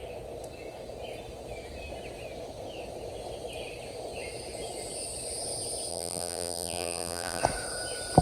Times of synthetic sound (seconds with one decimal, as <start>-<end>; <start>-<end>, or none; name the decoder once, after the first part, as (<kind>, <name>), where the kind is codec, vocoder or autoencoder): 5.9-7.4 (vocoder, BigVGAN v2)